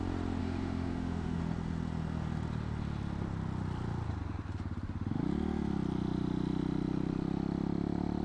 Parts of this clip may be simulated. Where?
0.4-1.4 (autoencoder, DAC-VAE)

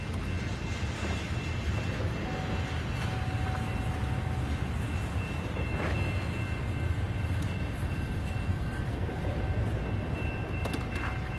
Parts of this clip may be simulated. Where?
8.5-9.2 (codec, SNAC)

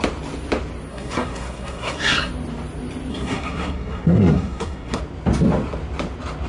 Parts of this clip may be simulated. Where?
0.9-2.3 (codec, SNAC); 3.1-5.0